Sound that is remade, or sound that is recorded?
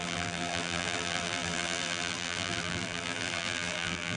remade